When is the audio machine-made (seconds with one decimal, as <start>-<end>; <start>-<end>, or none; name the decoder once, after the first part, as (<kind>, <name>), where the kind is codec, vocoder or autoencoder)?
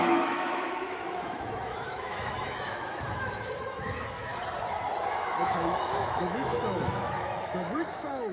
0.0-4.3 (autoencoder, DAC-VAE); 5.1-8.3